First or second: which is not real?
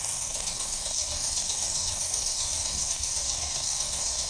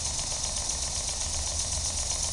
first